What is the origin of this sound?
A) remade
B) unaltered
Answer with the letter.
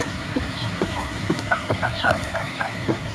A